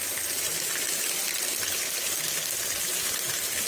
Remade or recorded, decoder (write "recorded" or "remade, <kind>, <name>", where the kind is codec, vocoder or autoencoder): recorded